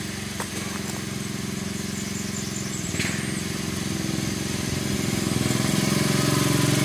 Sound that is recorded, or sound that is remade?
recorded